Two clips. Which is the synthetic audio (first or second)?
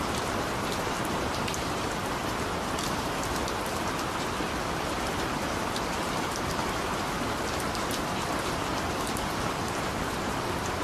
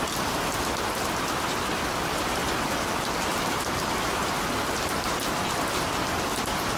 first